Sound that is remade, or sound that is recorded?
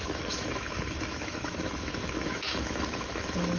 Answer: remade